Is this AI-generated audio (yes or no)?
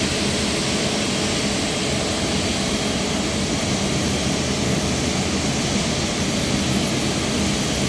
no